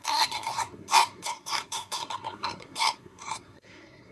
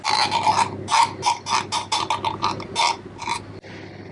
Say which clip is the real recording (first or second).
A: second